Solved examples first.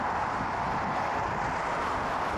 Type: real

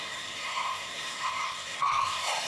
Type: fake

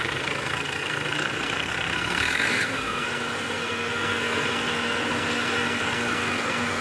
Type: fake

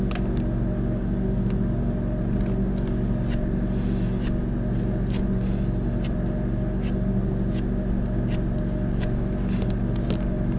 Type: real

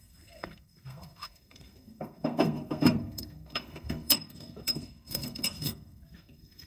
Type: fake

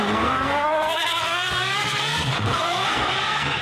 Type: fake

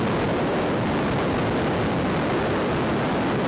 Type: real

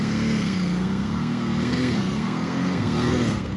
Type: fake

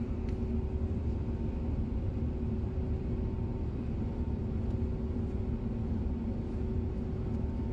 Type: real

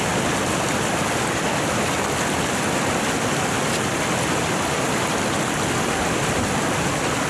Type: real